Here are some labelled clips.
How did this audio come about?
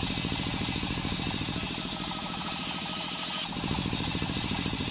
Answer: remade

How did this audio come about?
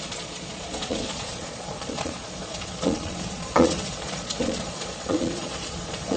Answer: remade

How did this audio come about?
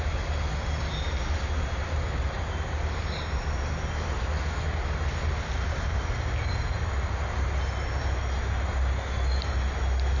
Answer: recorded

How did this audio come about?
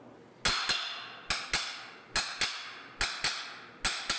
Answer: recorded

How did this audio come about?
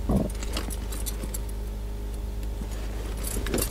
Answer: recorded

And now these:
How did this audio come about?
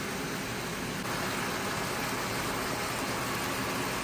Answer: recorded